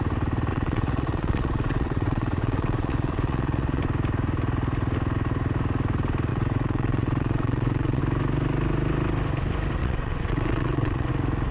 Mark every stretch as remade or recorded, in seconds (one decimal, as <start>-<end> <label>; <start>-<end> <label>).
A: 0.0-0.5 recorded; 0.5-3.8 remade; 3.8-6.3 recorded; 6.3-8.0 remade; 8.0-9.8 recorded; 9.8-11.1 remade; 11.1-11.5 recorded